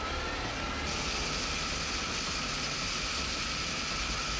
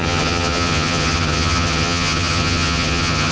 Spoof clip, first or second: second